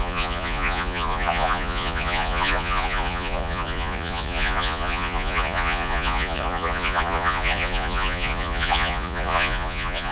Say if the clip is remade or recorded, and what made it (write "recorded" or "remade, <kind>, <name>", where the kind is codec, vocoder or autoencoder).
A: remade, vocoder, Vocos